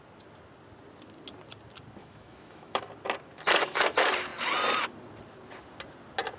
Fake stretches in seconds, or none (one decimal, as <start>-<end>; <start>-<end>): 2.0-2.8